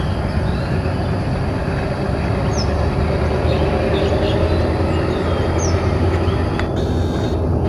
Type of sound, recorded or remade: recorded